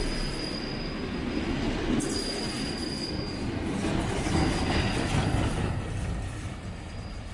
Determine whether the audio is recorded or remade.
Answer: recorded